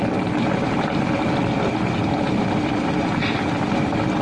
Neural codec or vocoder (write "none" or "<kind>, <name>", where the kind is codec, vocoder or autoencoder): none